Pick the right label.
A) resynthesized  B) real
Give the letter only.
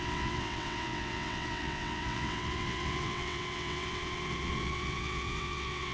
A